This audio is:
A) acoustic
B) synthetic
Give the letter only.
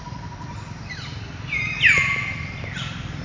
A